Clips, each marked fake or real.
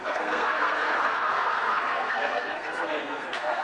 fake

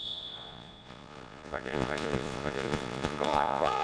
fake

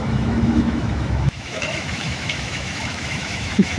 fake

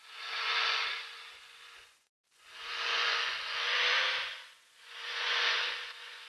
fake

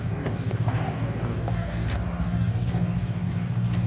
fake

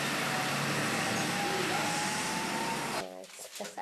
real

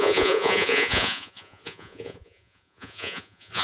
fake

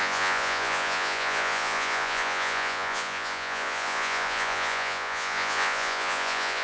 fake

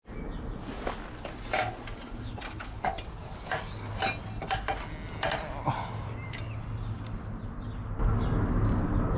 real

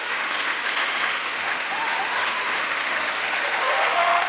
fake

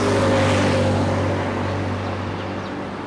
real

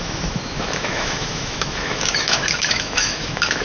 fake